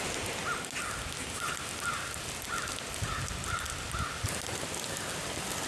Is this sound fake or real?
real